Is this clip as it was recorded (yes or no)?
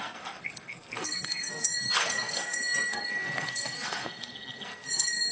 no